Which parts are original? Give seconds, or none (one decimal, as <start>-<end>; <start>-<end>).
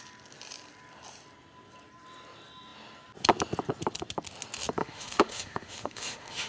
0.0-4.8